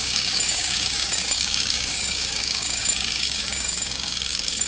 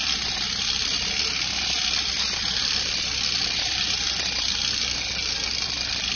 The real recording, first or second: second